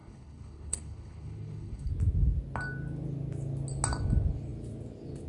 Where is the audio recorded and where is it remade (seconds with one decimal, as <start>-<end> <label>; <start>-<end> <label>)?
0.0-1.9 remade; 1.9-5.3 recorded